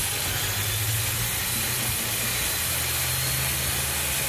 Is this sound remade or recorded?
recorded